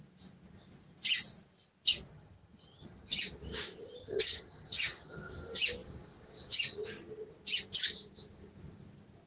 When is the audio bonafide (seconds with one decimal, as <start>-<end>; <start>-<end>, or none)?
0.0-2.1; 3.2-4.0; 5.3-9.3